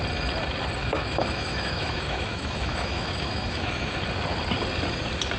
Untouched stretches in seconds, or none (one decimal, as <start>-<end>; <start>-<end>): 0.0-0.8; 4.0-5.4